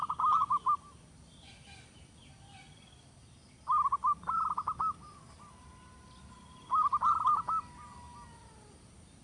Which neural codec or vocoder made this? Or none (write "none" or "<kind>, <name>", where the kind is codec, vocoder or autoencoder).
none